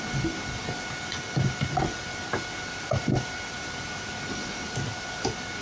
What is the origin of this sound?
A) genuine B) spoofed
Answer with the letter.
A